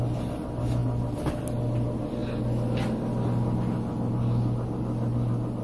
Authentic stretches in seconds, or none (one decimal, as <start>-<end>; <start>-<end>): 0.0-5.6